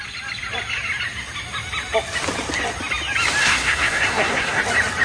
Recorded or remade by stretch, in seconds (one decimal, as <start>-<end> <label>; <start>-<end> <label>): 0.0-3.4 recorded; 3.4-4.6 remade; 4.6-5.0 recorded